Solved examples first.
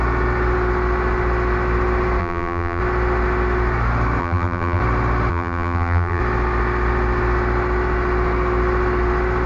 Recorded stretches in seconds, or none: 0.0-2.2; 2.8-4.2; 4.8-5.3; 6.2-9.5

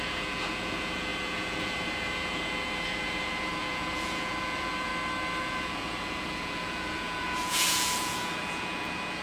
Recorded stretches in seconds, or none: 4.9-5.4